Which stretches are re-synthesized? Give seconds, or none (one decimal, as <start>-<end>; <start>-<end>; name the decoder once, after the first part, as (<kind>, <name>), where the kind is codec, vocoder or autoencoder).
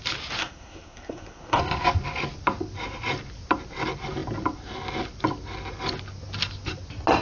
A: 0.4-1.6 (codec, SNAC)